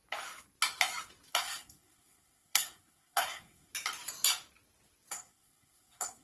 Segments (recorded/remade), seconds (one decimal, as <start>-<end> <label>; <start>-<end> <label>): 0.0-1.3 recorded; 1.3-3.7 remade; 3.7-5.1 recorded; 5.1-6.2 remade